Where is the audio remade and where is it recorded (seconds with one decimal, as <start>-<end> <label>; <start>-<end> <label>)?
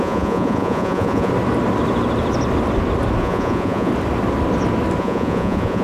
0.0-1.3 remade; 1.3-3.2 recorded; 3.2-3.9 remade; 3.9-5.0 recorded; 5.0-5.8 remade